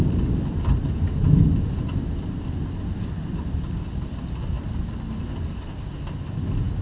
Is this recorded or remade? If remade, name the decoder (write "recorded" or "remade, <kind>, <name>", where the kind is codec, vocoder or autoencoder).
recorded